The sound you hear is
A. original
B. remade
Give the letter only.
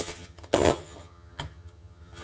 B